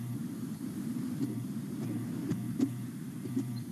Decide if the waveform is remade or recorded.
remade